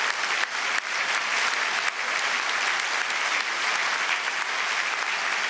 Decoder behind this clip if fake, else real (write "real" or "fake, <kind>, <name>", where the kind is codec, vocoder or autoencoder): real